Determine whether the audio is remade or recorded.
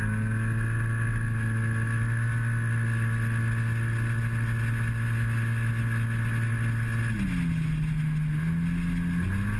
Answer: recorded